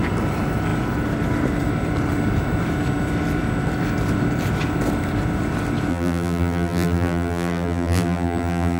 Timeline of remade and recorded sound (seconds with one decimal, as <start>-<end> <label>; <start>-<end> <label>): 0.0-5.9 recorded; 5.9-8.8 remade